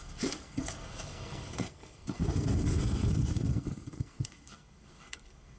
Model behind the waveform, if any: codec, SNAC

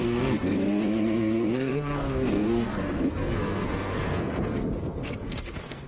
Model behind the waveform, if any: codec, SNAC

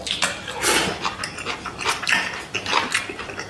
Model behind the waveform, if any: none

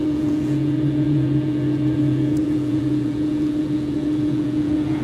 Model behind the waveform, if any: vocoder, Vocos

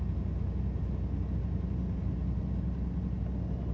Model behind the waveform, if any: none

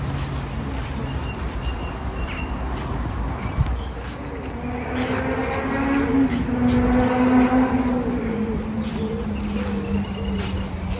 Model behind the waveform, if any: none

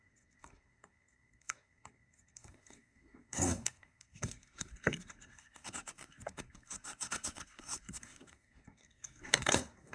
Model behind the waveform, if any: codec, SNAC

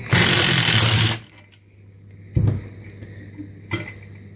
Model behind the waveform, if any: none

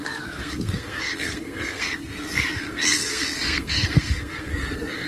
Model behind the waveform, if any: codec, SNAC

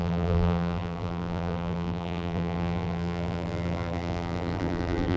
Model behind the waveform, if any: vocoder, BigVGAN v2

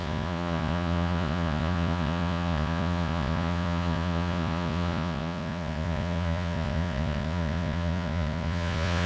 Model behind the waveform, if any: vocoder, Vocos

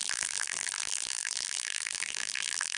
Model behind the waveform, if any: vocoder, BigVGAN v2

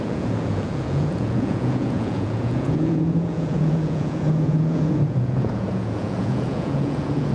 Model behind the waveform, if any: vocoder, Vocos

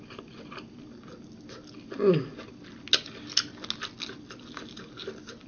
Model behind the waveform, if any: none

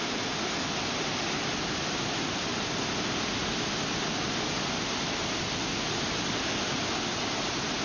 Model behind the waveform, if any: none